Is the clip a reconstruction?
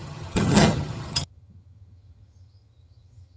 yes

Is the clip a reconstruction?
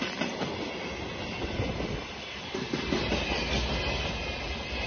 no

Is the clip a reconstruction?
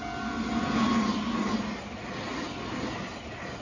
no